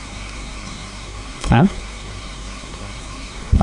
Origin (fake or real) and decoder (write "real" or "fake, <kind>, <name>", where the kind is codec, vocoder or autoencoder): fake, codec, SNAC